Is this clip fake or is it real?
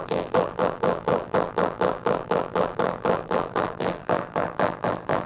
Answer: fake